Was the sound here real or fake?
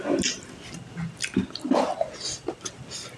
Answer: real